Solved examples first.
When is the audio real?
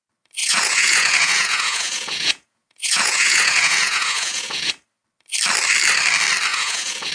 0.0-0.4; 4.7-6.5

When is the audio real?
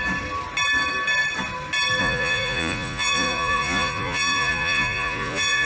0.0-2.0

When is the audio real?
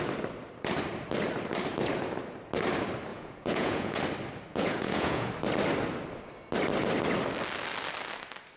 0.0-3.1; 4.0-4.5; 5.3-8.6